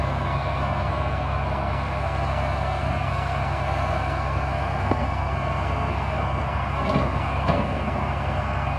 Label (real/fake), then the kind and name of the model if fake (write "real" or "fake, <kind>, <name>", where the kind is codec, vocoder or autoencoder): fake, codec, SNAC